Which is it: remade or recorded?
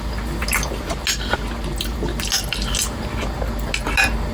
recorded